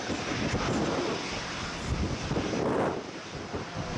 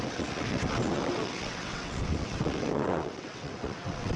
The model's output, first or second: second